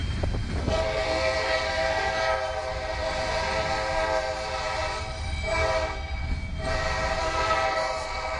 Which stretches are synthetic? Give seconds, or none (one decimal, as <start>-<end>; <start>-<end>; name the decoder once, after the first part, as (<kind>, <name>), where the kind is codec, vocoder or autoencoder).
0.6-2.2 (codec, SNAC); 7.2-8.4

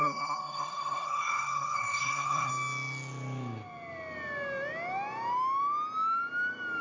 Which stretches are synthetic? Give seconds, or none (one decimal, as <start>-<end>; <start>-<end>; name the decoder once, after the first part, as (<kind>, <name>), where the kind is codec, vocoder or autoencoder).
0.0-2.5 (codec, SNAC)

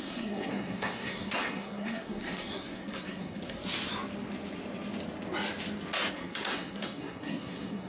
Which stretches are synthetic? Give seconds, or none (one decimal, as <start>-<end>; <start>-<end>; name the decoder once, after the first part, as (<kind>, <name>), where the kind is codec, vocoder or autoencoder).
0.0-3.6 (codec, SNAC); 6.1-7.9

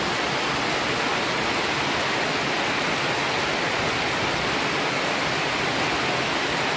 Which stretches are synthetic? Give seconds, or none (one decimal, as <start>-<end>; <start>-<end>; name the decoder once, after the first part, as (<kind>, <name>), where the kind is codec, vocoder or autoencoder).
none

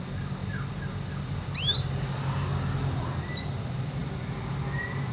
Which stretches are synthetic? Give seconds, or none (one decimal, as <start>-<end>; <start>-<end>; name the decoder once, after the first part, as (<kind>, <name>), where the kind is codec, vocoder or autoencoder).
none

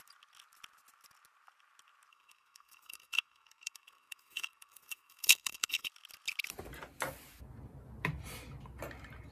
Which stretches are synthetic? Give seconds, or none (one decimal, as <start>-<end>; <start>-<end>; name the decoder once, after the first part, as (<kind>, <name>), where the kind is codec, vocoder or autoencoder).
2.1-5.9 (codec, SNAC)

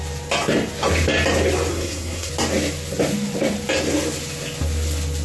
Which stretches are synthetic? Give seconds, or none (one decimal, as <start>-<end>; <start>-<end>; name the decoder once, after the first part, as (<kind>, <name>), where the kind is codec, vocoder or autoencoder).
1.7-2.3 (codec, SNAC)

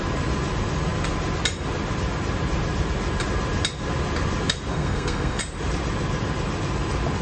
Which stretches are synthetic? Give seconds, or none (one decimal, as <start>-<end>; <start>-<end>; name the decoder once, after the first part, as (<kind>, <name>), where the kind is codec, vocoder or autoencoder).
4.7-5.4 (codec, SNAC)